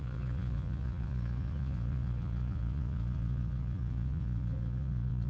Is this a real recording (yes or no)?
no